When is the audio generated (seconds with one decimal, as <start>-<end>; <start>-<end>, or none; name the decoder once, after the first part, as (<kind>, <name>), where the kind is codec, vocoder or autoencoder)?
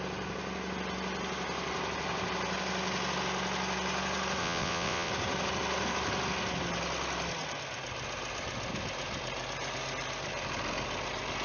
4.4-5.1 (vocoder, WaveNeXt)